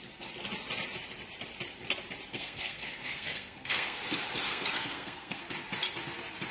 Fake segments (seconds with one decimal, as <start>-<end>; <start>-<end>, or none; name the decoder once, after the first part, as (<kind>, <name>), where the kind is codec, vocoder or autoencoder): 2.3-4.0 (codec, SNAC); 4.5-5.4